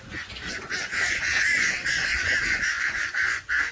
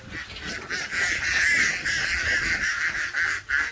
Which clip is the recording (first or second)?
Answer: second